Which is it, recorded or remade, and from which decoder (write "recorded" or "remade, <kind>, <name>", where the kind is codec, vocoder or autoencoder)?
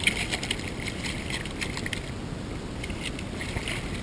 recorded